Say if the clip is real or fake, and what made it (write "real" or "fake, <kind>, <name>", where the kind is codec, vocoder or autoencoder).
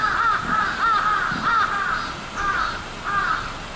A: real